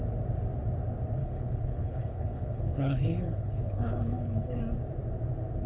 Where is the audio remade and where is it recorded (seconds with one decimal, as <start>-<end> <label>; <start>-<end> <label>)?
0.0-1.2 recorded; 1.2-4.6 remade; 4.6-5.7 recorded